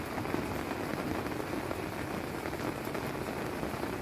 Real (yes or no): yes